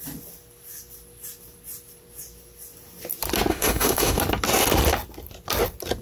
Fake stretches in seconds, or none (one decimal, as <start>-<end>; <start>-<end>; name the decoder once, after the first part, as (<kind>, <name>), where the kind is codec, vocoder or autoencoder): 3.5-4.2 (autoencoder, DAC-VAE)